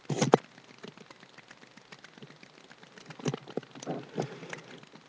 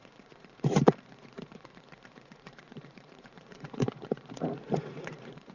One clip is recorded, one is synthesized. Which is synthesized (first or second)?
second